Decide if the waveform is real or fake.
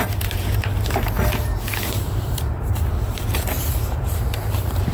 fake